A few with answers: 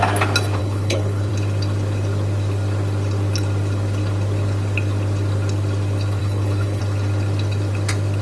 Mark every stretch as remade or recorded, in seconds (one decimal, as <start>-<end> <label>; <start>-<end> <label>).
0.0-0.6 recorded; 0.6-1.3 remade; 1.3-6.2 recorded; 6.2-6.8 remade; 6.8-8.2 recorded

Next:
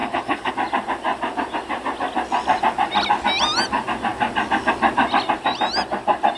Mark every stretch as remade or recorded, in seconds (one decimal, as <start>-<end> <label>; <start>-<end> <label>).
0.0-0.5 remade; 0.5-6.4 recorded

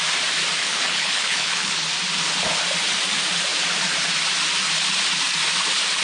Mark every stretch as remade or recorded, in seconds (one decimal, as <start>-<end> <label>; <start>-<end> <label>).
0.0-0.6 recorded; 0.6-1.9 remade; 1.9-6.0 recorded

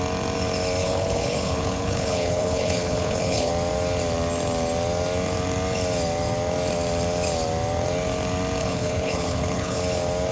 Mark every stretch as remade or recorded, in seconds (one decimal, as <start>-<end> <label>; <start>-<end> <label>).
0.0-0.8 recorded; 0.8-3.5 remade; 3.5-8.6 recorded; 8.6-9.8 remade; 9.8-10.3 recorded